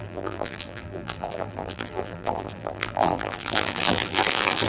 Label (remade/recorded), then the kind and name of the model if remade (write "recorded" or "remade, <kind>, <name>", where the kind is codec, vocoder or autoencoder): remade, vocoder, BigVGAN v2